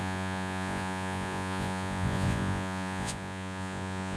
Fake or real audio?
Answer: fake